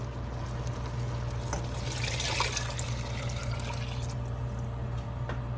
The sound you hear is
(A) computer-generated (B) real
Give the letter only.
B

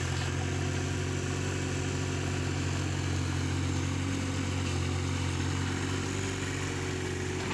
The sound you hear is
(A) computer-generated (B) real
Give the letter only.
B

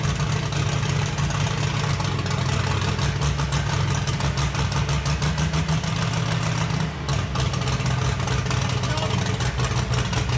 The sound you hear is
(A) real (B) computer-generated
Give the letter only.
A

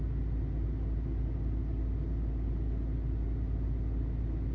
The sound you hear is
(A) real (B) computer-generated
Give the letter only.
A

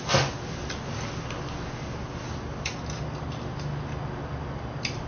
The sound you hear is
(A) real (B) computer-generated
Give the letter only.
A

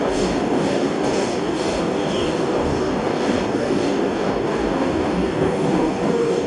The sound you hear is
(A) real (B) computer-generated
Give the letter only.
B